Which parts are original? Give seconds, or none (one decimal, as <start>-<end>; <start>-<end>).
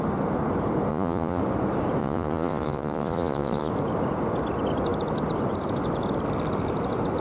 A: 0.0-0.9; 1.4-2.0; 3.7-7.2